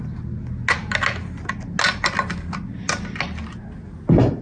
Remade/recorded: recorded